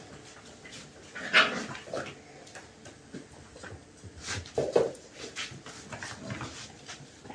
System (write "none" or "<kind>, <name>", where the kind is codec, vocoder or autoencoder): none